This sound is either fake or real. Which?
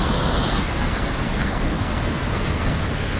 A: fake